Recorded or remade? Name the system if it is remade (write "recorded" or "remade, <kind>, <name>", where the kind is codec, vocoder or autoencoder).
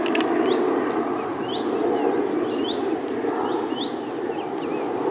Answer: recorded